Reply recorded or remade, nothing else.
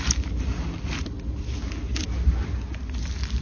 recorded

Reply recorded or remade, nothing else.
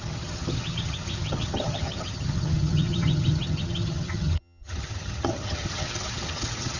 remade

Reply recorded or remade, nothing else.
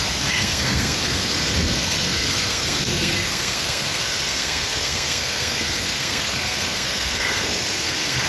remade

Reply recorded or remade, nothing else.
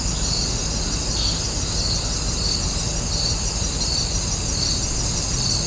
recorded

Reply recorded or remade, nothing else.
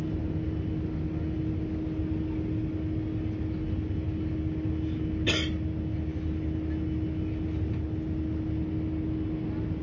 recorded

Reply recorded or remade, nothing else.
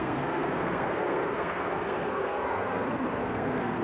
remade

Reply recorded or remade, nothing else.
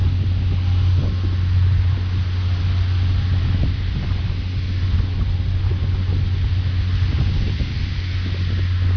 recorded